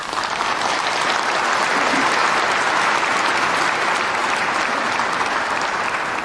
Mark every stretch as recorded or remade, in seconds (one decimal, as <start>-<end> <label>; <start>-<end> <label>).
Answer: 0.0-6.2 recorded